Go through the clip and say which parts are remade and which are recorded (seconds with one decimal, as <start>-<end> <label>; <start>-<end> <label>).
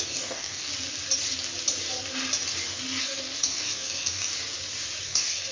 0.0-0.7 remade; 0.7-3.0 recorded; 3.0-4.3 remade; 4.3-5.0 recorded; 5.0-5.5 remade